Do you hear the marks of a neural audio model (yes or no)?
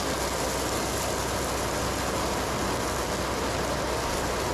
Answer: no